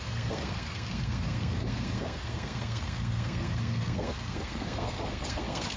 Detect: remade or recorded remade